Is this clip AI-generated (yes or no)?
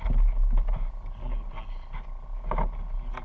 no